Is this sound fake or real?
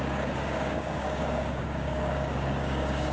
fake